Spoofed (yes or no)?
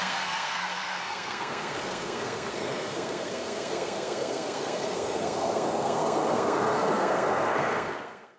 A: yes